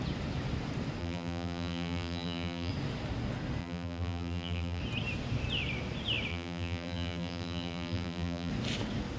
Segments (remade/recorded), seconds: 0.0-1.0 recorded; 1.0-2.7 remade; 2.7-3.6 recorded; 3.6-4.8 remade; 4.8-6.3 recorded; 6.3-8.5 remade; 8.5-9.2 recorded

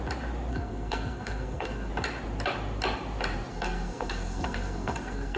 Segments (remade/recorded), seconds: 0.0-0.5 recorded; 0.5-1.9 remade; 1.9-3.5 recorded; 3.5-5.4 remade

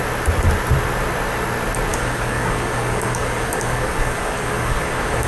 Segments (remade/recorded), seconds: 0.0-1.9 recorded; 1.9-5.3 remade

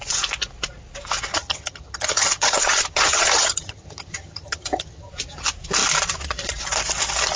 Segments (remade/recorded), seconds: 0.0-1.3 recorded; 1.3-5.1 remade; 5.1-7.4 recorded

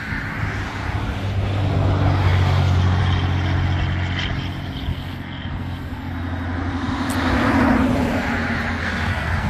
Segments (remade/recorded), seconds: 0.0-4.9 recorded; 4.9-6.1 remade; 6.1-8.8 recorded; 8.8-9.5 remade